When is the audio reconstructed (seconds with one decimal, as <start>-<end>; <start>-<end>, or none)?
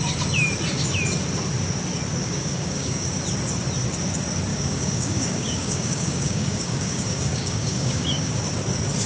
2.2-3.2; 4.5-8.4